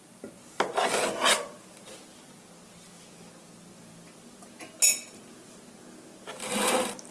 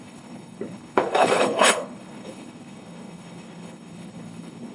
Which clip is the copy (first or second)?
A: second